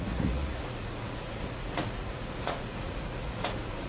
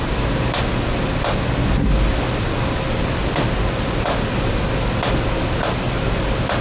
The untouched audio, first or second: second